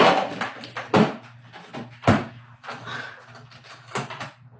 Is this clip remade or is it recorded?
recorded